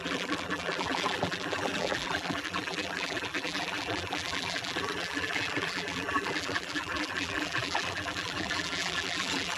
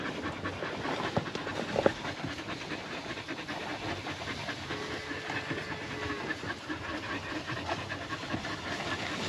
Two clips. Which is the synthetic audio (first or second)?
first